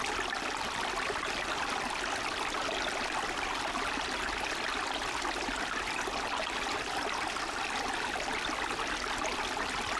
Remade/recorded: recorded